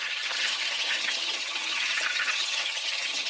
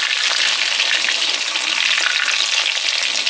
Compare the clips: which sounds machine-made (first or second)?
first